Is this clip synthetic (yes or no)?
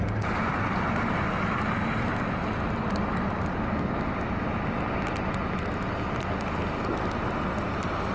no